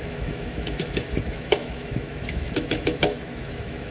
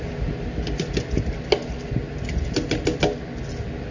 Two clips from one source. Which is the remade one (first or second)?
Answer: first